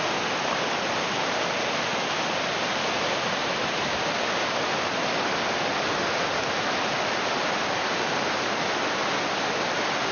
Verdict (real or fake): real